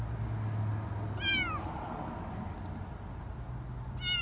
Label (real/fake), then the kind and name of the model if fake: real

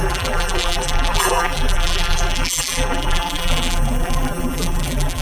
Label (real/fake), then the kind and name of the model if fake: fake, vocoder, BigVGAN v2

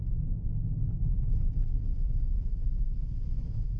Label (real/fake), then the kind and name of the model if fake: real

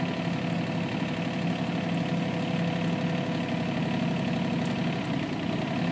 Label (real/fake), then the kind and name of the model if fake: real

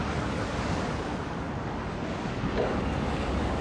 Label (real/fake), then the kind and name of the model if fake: fake, codec, DAC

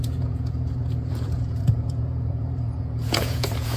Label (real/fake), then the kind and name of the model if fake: fake, vocoder, Vocos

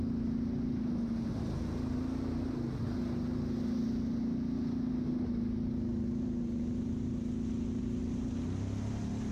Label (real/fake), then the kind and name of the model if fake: real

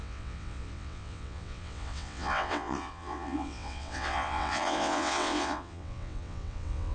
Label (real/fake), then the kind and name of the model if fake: fake, vocoder, WaveNeXt